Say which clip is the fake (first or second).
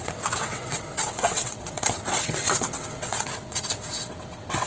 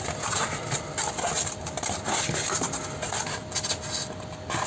first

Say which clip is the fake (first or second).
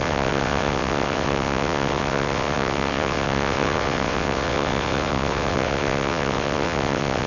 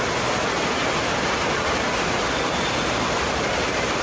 first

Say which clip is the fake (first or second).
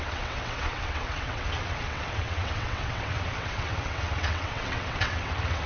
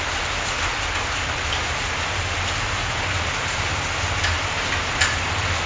first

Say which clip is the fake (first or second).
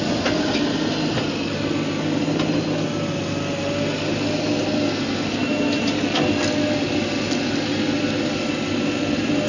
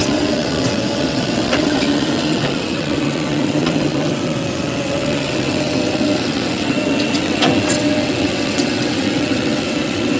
second